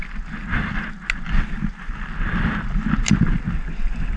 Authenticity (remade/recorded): recorded